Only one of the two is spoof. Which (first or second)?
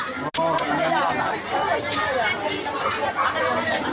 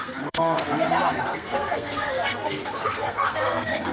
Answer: second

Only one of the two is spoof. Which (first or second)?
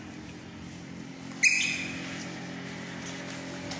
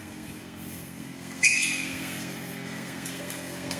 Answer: second